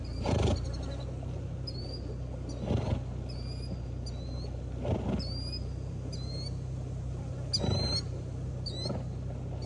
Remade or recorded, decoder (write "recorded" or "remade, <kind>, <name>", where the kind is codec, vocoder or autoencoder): recorded